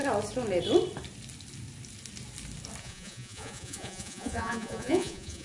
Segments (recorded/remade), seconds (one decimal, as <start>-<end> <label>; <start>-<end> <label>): 0.0-2.8 recorded; 2.8-5.4 remade